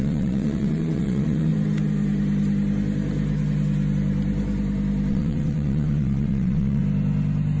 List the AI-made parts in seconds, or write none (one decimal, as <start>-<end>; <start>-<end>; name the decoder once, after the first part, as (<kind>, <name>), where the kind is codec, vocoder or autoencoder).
0.0-1.5 (vocoder, WaveNeXt); 5.1-6.8